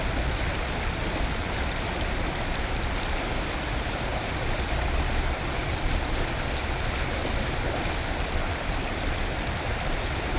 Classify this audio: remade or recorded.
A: remade